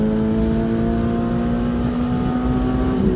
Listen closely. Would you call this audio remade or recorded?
recorded